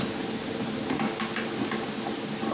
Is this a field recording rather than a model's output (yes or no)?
yes